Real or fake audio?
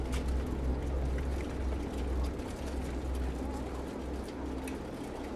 real